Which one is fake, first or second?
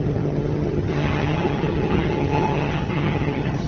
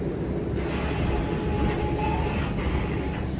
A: first